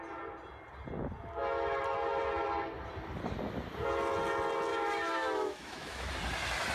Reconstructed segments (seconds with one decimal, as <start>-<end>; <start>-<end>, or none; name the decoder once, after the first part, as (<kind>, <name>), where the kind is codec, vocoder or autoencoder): 4.7-6.1 (autoencoder, DAC-VAE)